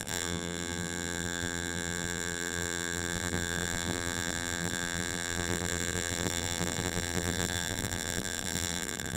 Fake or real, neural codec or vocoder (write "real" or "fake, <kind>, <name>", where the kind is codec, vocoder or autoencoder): fake, vocoder, BigVGAN v2